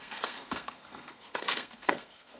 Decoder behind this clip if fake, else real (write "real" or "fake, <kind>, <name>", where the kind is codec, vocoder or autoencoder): fake, codec, SNAC